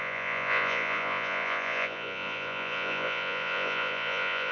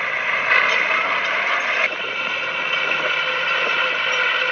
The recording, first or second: second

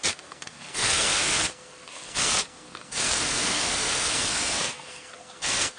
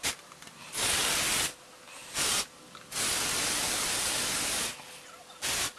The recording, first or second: second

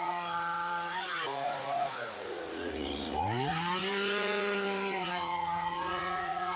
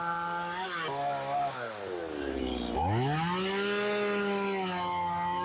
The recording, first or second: second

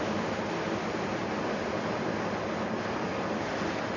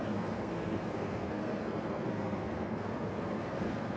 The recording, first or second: first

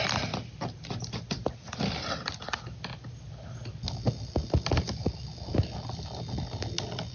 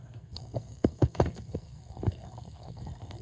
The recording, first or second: first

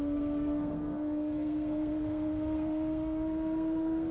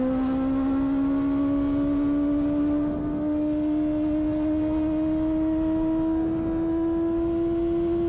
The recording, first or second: second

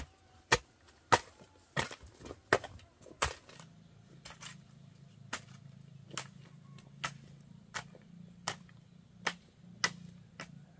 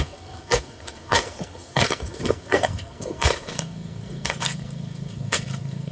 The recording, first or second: first